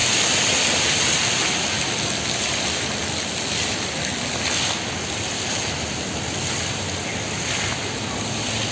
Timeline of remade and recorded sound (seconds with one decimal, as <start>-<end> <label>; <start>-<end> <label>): 0.0-8.7 recorded